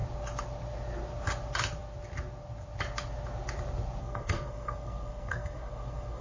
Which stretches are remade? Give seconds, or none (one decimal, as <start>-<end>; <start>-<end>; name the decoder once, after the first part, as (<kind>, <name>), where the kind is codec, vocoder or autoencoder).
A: 4.0-6.2 (codec, SNAC)